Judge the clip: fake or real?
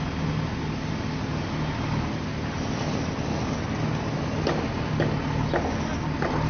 real